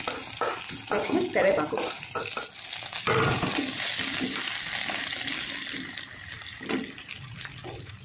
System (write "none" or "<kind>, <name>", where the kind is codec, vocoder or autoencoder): none